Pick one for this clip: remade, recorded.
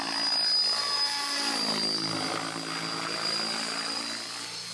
recorded